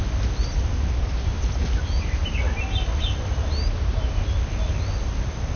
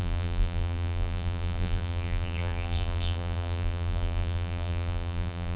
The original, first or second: first